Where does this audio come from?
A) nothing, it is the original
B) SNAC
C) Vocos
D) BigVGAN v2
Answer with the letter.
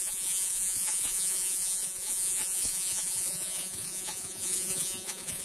C